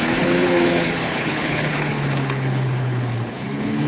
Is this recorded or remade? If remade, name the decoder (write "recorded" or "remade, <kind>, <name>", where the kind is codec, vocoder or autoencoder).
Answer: remade, codec, HILCodec